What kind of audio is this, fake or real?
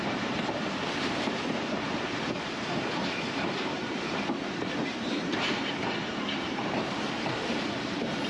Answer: fake